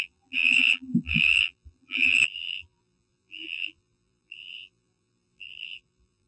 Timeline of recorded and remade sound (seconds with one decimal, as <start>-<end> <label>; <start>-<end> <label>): 0.0-6.3 remade